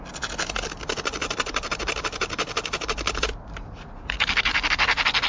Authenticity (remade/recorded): recorded